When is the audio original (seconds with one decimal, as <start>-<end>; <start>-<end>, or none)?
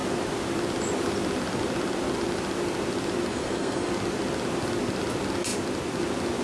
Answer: 0.0-3.3; 3.9-6.4